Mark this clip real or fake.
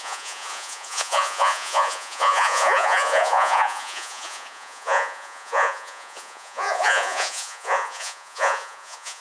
fake